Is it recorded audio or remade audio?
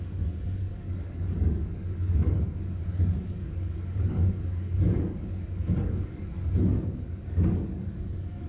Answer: remade